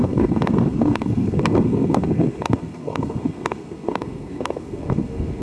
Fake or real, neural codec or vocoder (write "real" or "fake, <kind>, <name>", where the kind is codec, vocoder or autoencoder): fake, codec, SNAC